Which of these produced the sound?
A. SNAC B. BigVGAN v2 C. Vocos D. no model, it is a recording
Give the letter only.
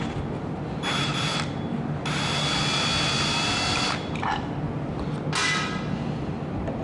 D